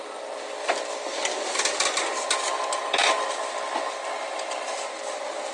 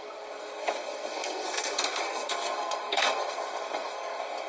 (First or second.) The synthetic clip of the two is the second